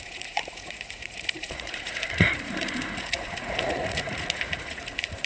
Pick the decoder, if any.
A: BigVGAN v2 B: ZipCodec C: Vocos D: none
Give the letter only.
C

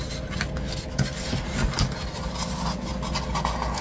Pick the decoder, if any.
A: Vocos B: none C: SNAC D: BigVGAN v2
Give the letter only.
B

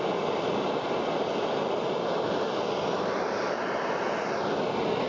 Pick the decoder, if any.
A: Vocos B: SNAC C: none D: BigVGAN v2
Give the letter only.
C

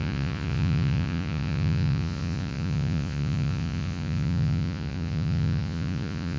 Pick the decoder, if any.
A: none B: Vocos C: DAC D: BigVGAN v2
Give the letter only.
B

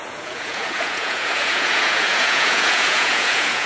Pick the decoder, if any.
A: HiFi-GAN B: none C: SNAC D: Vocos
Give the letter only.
D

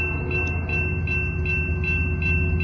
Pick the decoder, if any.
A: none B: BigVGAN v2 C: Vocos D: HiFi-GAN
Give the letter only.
A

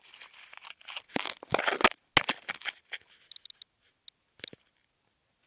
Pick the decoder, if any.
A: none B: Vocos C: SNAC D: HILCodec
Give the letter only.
A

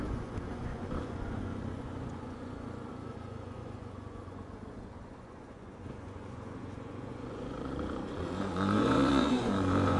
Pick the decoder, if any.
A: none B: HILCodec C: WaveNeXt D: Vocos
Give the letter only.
D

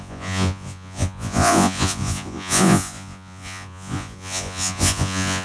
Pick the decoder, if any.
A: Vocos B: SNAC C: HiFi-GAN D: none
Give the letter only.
A